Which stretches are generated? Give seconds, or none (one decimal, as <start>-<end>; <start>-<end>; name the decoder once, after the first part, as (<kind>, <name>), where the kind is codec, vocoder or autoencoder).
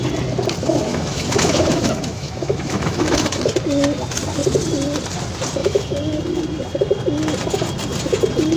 0.9-3.4 (autoencoder, DAC-VAE); 5.6-6.2